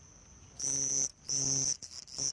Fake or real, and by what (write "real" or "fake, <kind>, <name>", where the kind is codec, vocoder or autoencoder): real